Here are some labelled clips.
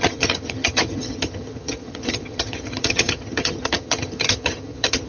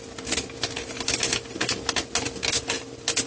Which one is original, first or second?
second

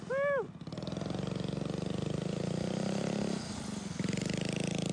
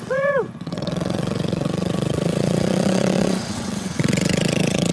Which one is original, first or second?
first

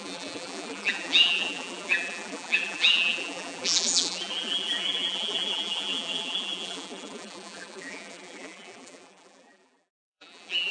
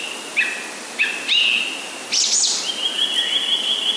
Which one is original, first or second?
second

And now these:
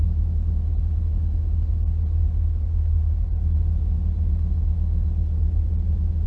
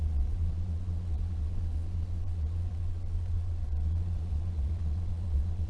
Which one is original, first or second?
first